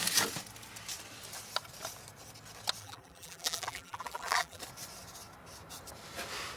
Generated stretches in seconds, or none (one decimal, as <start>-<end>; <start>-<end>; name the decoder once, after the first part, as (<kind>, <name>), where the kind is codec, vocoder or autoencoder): 2.8-4.6 (vocoder, BigVGAN v2)